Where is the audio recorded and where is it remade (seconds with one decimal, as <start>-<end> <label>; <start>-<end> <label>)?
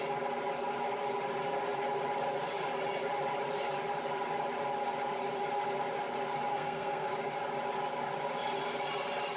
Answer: 0.0-6.5 recorded; 6.5-7.1 remade; 7.1-9.4 recorded